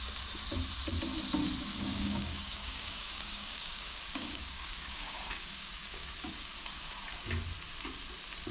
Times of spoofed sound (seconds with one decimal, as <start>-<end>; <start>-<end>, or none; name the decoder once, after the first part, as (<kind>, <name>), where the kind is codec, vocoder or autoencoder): 1.7-6.3 (codec, DAC)